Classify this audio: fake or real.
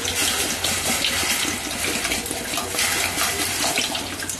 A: real